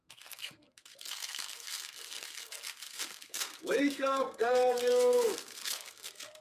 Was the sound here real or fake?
fake